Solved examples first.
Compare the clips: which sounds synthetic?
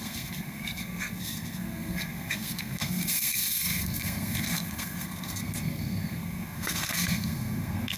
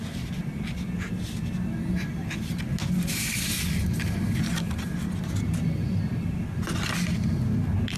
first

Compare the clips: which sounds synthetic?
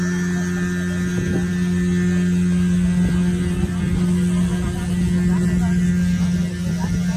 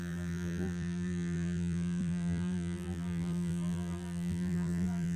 second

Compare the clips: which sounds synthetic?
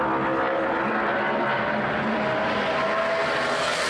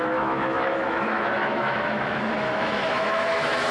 second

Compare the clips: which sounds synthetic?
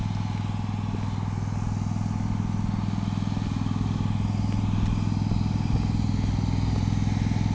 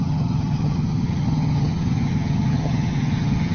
second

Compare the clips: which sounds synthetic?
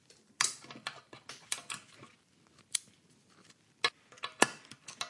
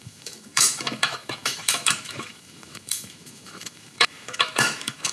second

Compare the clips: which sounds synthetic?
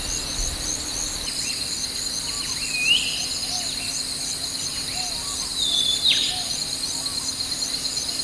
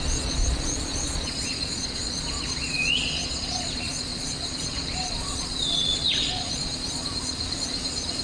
second